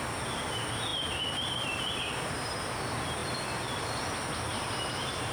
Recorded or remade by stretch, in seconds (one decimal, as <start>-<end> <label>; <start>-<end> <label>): 0.0-0.9 recorded; 0.9-2.0 remade; 2.0-3.2 recorded; 3.2-3.7 remade; 3.7-4.5 recorded; 4.5-5.3 remade